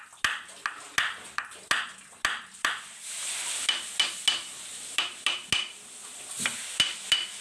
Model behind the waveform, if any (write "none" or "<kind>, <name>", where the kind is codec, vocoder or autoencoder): none